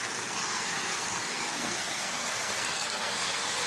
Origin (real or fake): fake